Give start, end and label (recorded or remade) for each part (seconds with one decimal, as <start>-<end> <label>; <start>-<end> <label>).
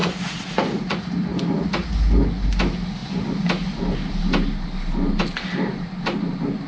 0.0-1.0 remade; 1.0-6.7 recorded